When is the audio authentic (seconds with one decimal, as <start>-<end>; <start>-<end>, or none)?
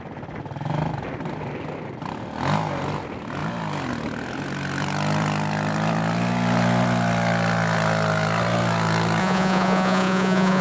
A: 0.0-9.2